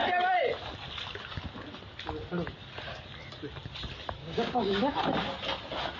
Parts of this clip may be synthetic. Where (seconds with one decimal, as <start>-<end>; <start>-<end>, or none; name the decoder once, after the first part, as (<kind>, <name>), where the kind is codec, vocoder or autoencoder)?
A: 4.2-4.9 (codec, DAC)